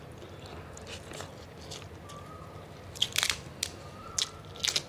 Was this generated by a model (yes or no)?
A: no